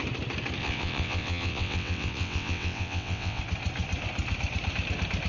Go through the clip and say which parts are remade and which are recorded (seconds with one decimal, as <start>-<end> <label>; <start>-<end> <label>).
0.0-0.6 recorded; 0.6-3.4 remade; 3.4-5.3 recorded